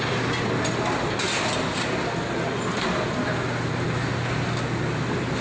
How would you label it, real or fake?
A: real